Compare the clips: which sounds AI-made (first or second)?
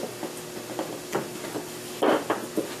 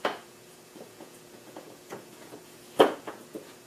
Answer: second